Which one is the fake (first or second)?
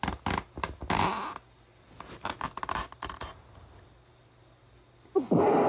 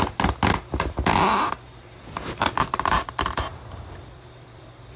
second